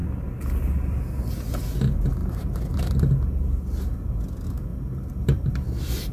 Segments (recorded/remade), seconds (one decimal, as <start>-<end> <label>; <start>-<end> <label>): 0.0-6.1 recorded